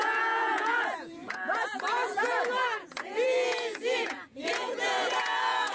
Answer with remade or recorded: remade